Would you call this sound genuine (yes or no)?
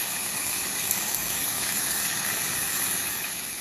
no